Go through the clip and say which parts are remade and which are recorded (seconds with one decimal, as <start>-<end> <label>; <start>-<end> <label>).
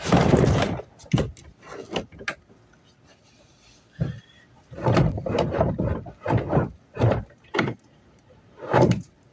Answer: 0.0-1.4 remade; 1.4-6.5 recorded; 6.5-9.3 remade